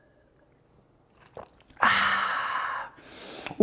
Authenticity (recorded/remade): recorded